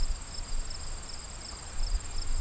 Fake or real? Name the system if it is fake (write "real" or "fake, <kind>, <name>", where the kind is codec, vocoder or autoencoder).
real